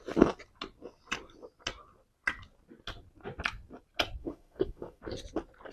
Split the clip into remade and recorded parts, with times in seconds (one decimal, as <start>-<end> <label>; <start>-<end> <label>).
0.0-4.2 recorded; 4.2-5.0 remade; 5.0-5.7 recorded